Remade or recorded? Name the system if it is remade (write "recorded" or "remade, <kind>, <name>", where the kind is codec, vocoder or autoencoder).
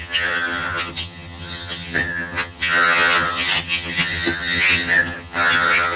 remade, vocoder, HiFi-GAN